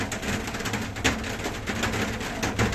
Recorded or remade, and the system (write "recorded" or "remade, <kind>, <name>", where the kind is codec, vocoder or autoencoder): recorded